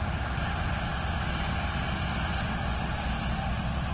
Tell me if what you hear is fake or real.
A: real